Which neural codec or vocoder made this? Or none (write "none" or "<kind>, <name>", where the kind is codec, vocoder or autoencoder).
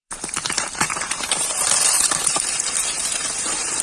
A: vocoder, BigVGAN v2